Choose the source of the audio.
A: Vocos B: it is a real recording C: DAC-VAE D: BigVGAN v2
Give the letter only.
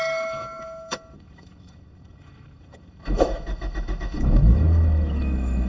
C